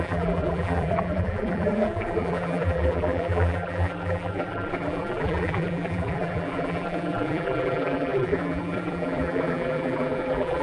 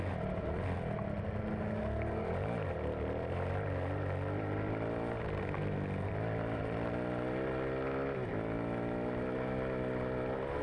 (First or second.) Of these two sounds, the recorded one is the second